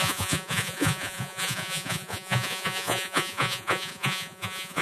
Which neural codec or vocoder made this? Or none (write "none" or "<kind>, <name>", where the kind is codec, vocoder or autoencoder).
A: vocoder, Vocos